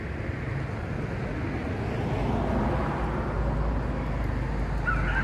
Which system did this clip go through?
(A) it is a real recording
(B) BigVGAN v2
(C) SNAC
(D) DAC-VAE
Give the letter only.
A